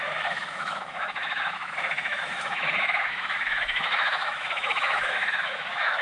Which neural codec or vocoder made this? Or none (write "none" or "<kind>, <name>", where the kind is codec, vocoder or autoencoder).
autoencoder, DAC-VAE